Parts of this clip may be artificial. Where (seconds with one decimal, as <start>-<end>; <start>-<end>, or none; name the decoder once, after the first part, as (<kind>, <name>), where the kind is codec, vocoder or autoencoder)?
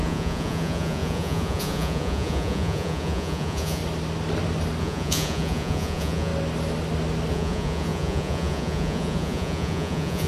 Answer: 0.0-3.8 (vocoder, Vocos); 4.8-6.3; 7.3-10.3